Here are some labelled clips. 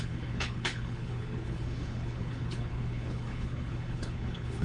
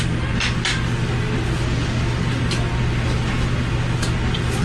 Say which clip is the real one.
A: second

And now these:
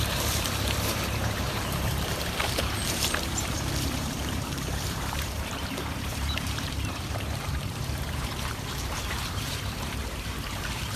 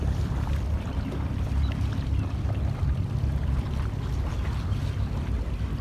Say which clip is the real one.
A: second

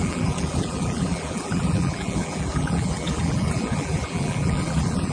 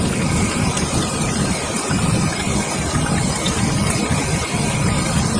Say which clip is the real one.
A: second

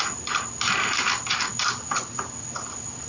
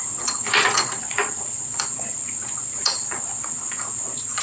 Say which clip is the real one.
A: first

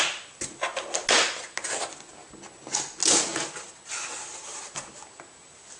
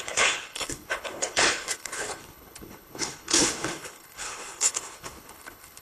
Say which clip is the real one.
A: first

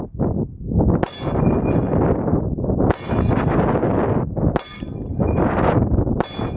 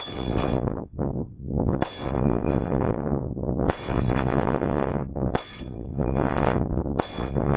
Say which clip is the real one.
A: first